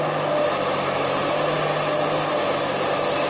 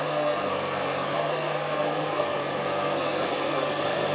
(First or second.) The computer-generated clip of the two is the second